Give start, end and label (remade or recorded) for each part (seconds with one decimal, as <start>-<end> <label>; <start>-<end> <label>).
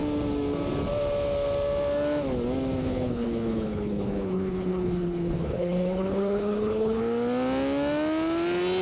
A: 0.0-2.8 recorded; 2.8-7.0 remade; 7.0-8.8 recorded